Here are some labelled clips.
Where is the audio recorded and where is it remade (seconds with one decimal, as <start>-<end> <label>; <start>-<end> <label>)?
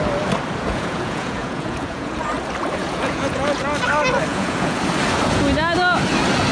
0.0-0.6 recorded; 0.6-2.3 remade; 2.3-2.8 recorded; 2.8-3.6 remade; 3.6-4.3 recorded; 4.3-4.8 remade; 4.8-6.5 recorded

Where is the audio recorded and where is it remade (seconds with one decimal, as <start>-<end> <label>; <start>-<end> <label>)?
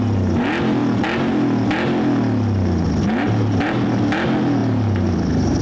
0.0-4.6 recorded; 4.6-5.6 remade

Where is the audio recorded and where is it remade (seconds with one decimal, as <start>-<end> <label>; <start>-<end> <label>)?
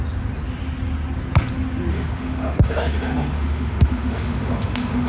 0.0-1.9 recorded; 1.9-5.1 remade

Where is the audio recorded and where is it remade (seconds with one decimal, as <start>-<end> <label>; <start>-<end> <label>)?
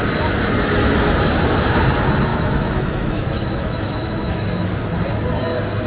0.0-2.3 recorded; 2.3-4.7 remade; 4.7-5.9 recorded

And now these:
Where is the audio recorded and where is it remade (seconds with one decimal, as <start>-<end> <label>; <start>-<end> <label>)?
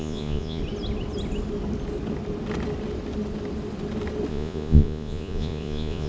0.0-0.6 remade; 0.6-4.3 recorded; 4.3-6.1 remade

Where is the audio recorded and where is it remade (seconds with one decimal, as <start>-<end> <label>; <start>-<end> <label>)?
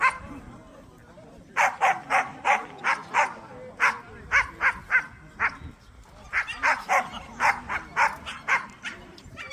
0.0-2.3 recorded; 2.3-2.8 remade; 2.8-8.3 recorded; 8.3-9.5 remade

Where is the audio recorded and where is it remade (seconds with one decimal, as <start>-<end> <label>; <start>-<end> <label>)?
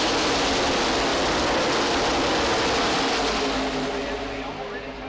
0.0-5.1 recorded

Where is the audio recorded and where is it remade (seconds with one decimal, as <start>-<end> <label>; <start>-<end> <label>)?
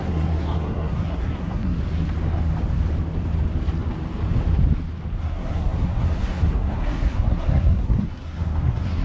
0.0-1.8 remade; 1.8-5.2 recorded; 5.2-9.0 remade